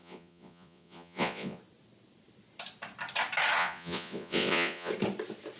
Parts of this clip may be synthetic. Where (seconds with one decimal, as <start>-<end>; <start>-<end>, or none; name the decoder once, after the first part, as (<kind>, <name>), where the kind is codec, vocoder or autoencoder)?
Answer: 0.0-1.6 (vocoder, Vocos); 3.6-4.9